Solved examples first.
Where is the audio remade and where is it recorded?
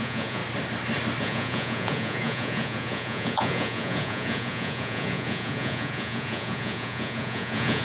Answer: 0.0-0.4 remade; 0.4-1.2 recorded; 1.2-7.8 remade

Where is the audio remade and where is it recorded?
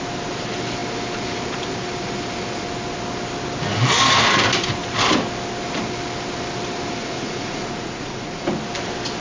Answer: 0.0-7.0 recorded; 7.0-8.5 remade; 8.5-9.2 recorded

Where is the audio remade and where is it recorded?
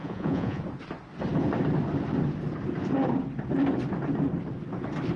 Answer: 0.0-0.6 remade; 0.6-5.2 recorded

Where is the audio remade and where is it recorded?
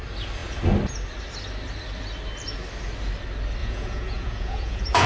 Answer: 0.0-3.6 recorded; 3.6-5.1 remade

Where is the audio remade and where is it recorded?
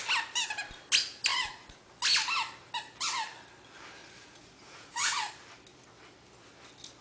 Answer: 0.0-1.3 recorded; 1.3-1.9 remade; 1.9-4.0 recorded; 4.0-5.3 remade; 5.3-7.0 recorded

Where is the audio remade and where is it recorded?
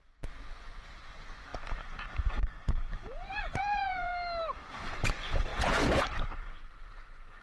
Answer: 0.0-4.1 remade; 4.1-4.6 recorded; 4.6-7.4 remade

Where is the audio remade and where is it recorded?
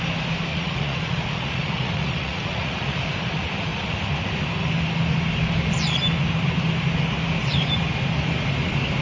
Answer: 0.0-0.5 recorded; 0.5-3.0 remade; 3.0-9.0 recorded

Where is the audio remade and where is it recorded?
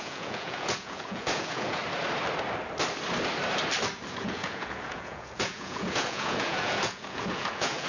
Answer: 0.0-1.8 remade; 1.8-4.1 recorded; 4.1-7.9 remade